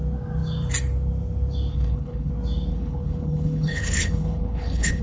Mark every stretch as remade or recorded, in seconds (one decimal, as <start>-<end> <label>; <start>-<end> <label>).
0.0-1.7 recorded; 1.7-2.3 remade; 2.3-2.7 recorded; 2.7-5.0 remade